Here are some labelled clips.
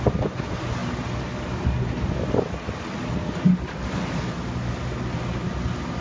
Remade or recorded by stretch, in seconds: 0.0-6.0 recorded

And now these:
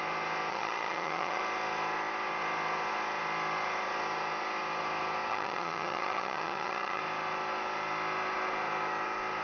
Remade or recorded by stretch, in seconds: 0.0-0.5 recorded; 0.5-1.4 remade; 1.4-5.3 recorded; 5.3-7.0 remade; 7.0-9.4 recorded

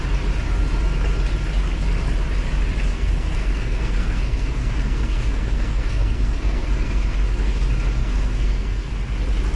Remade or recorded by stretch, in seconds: 0.0-2.9 recorded; 2.9-7.6 remade; 7.6-8.0 recorded; 8.0-8.9 remade; 8.9-9.6 recorded